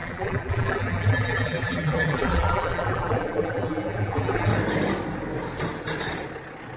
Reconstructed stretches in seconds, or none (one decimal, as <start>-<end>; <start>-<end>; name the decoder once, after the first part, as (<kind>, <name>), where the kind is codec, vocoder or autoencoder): 0.0-4.5 (vocoder, BigVGAN v2)